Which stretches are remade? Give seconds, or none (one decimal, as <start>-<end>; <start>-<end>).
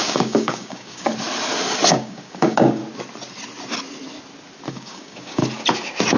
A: 0.0-1.1; 1.9-2.8; 4.7-5.4